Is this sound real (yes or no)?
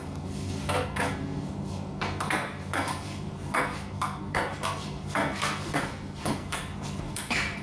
no